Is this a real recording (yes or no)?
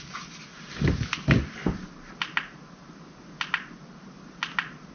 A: yes